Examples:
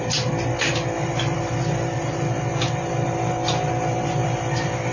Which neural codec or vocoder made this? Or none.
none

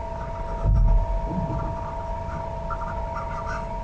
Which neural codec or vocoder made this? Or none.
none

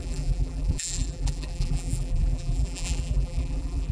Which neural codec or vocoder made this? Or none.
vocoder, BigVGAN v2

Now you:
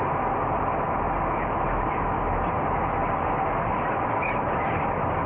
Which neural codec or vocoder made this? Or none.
none